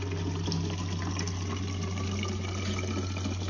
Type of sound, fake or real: real